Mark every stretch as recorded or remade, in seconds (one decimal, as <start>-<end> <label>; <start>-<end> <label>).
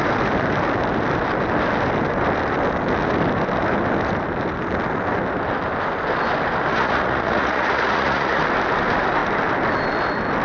0.0-6.7 recorded; 6.7-8.4 remade; 8.4-10.4 recorded